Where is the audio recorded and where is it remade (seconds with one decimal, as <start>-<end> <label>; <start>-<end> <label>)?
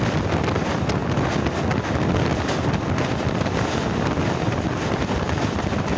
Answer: 0.0-6.0 recorded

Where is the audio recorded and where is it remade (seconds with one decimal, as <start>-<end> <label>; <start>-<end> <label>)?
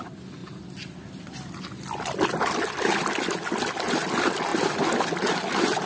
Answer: 0.0-5.9 recorded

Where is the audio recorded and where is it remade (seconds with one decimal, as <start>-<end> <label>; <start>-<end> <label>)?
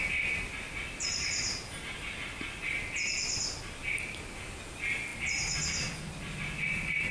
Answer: 0.0-7.1 recorded